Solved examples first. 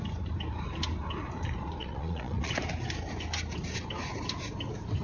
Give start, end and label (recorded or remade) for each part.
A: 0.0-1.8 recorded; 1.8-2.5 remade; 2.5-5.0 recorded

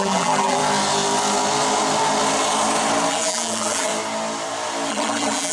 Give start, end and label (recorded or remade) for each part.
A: 0.0-0.6 remade; 0.6-3.1 recorded; 3.1-3.9 remade; 3.9-4.9 recorded; 4.9-5.5 remade

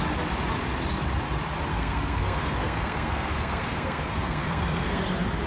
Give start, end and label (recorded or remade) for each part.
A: 0.0-1.7 recorded; 1.7-5.0 remade; 5.0-5.5 recorded

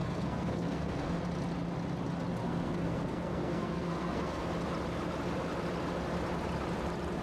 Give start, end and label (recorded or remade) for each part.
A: 0.0-1.2 remade; 1.2-2.4 recorded; 2.4-4.5 remade; 4.5-7.2 recorded

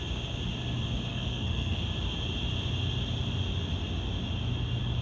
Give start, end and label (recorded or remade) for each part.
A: 0.0-1.1 recorded; 1.1-1.8 remade; 1.8-5.0 recorded

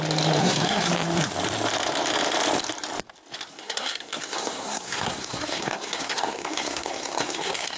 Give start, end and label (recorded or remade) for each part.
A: 0.0-0.4 recorded; 0.4-0.9 remade; 0.9-3.5 recorded; 3.5-7.8 remade

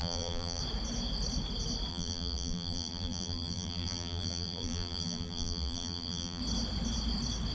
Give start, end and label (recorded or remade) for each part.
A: 0.0-0.6 remade; 0.6-1.9 recorded; 1.9-6.4 remade; 6.4-7.5 recorded